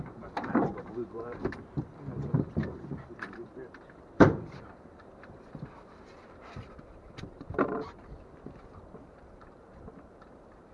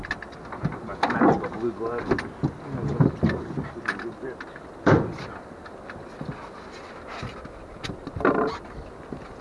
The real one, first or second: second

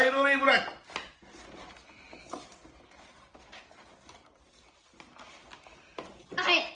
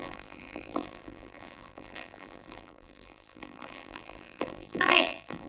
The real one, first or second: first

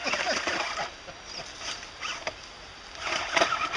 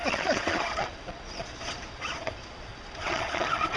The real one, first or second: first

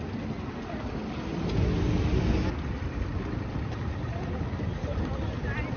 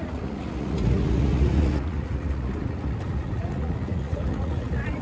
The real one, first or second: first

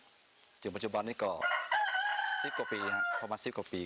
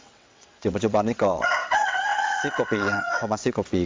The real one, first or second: first